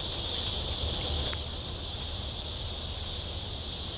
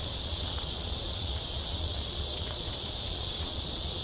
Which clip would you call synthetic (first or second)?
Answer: second